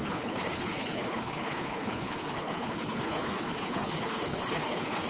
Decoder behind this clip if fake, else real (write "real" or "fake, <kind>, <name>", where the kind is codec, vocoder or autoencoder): fake, codec, HILCodec